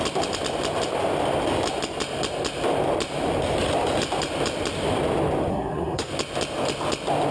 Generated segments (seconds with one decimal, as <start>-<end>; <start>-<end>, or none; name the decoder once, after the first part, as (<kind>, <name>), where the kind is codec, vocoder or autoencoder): 5.5-6.1 (codec, SNAC)